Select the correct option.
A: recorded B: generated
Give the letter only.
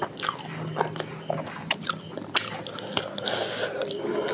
A